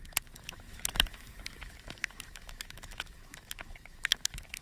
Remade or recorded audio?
remade